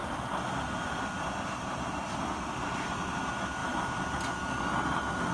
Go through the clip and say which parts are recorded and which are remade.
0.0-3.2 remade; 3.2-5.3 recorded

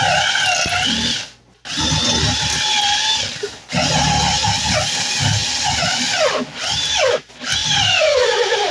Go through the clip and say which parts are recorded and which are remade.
0.0-7.6 recorded; 7.6-8.7 remade

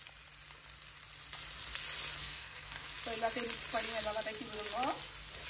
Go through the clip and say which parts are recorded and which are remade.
0.0-2.2 recorded; 2.2-2.9 remade; 2.9-5.5 recorded

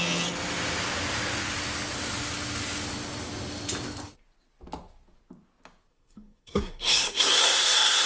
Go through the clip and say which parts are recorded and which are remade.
0.0-5.9 recorded; 5.9-8.1 remade

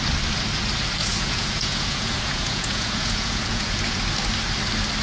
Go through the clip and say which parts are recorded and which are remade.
0.0-1.0 recorded; 1.0-4.0 remade; 4.0-5.0 recorded

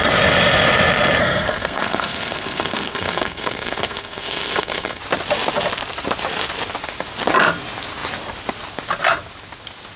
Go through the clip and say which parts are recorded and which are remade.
0.0-1.2 recorded; 1.2-5.0 remade; 5.0-10.0 recorded

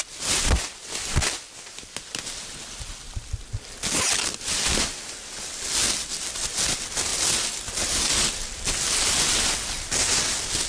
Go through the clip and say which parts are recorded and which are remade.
0.0-10.7 recorded

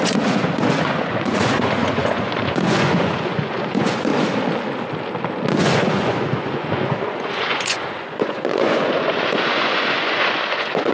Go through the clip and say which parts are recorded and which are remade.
0.0-4.1 remade; 4.1-5.6 recorded; 5.6-10.9 remade